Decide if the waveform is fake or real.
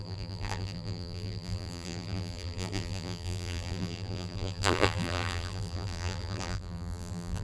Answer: fake